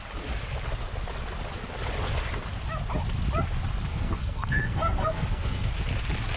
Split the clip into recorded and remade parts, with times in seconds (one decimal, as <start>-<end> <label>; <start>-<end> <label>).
0.0-3.9 recorded; 3.9-5.7 remade; 5.7-6.4 recorded